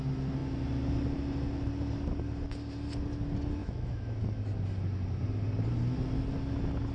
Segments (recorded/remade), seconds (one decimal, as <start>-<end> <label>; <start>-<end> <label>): 0.0-3.6 recorded; 3.6-4.1 remade; 4.1-6.9 recorded